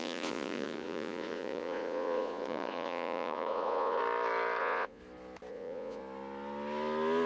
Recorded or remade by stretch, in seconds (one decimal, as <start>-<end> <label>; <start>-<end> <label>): 0.0-4.0 remade; 4.0-4.6 recorded; 4.6-5.0 remade; 5.0-5.5 recorded; 5.5-6.0 remade; 6.0-7.3 recorded